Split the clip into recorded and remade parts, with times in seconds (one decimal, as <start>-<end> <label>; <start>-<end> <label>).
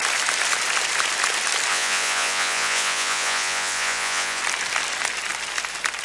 0.0-1.7 recorded; 1.7-4.4 remade; 4.4-6.0 recorded